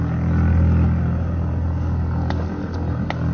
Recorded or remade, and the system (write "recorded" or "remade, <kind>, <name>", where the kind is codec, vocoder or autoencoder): recorded